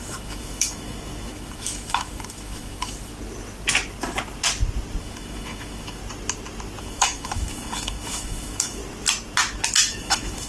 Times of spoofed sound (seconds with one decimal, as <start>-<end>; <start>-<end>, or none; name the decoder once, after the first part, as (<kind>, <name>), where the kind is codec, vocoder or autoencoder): 0.0-3.1 (autoencoder, DAC-VAE); 5.0-6.0; 6.8-8.8; 9.9-10.5